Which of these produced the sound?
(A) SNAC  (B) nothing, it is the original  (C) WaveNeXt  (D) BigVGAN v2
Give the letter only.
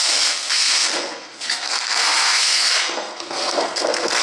A